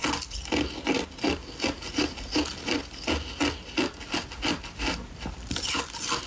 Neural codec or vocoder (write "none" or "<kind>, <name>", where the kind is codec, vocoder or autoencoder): none